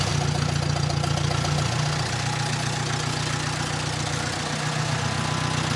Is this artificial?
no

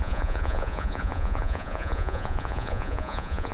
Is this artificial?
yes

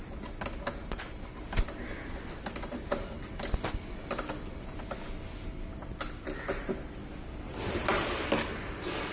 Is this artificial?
no